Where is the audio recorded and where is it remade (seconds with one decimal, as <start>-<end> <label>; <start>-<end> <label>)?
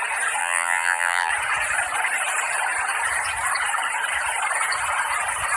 0.0-0.4 recorded; 0.4-1.3 remade; 1.3-5.6 recorded